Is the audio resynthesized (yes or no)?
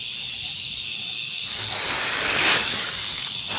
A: yes